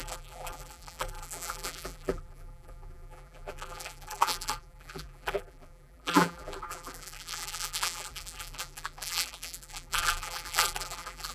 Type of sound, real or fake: fake